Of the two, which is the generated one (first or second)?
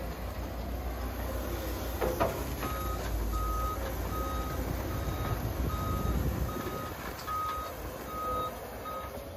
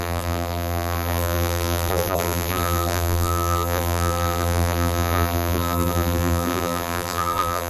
second